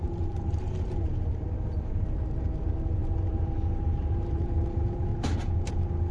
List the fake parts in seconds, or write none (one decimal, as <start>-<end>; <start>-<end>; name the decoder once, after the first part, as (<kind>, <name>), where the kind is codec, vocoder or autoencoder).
0.0-5.1 (vocoder, BigVGAN v2)